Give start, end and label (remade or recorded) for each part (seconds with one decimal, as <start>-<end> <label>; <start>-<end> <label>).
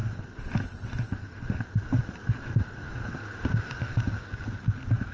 0.0-3.2 recorded; 3.2-4.4 remade; 4.4-5.1 recorded